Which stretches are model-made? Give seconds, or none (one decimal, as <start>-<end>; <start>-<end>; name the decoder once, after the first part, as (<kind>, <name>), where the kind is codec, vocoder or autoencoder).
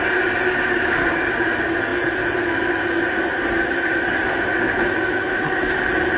4.5-5.7 (autoencoder, DAC-VAE)